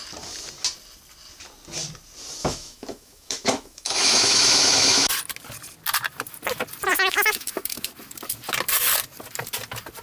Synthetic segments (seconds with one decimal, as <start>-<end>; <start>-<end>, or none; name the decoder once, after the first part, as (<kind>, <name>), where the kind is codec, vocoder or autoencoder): 2.4-5.1 (autoencoder, DAC-VAE); 6.9-7.9